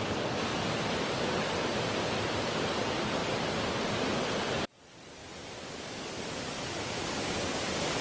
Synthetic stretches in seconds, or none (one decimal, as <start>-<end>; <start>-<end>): 0.0-0.5; 1.8-3.2; 3.9-8.0